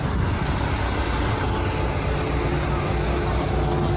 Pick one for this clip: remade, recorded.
recorded